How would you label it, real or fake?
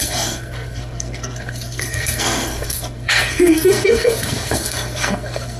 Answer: fake